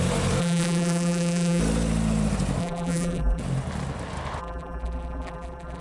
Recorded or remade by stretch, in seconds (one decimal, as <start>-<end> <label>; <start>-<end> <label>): 0.0-0.4 recorded; 0.4-1.6 remade; 1.6-2.6 recorded; 2.6-3.4 remade; 3.4-4.4 recorded; 4.4-5.8 remade